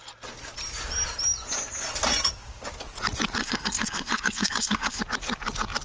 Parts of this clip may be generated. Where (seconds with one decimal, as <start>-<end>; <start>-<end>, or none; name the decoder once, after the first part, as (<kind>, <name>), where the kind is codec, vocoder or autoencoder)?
3.4-5.0 (codec, SNAC)